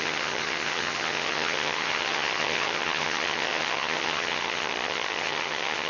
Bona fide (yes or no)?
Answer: no